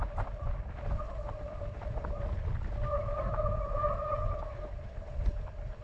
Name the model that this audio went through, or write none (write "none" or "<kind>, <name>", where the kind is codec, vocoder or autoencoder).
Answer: none